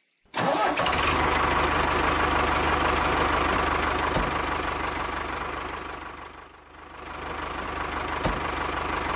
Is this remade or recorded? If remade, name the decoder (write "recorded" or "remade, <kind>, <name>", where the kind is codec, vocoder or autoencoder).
recorded